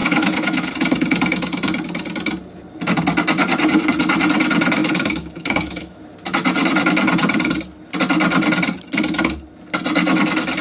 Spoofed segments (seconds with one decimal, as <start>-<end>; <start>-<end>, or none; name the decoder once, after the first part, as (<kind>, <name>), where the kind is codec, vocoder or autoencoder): 0.0-0.7 (autoencoder, DAC-VAE); 4.8-6.0